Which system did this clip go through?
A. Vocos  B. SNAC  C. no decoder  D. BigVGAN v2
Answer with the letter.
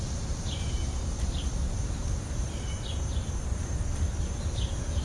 D